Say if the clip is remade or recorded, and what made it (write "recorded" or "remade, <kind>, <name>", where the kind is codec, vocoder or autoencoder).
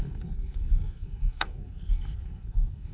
remade, codec, SNAC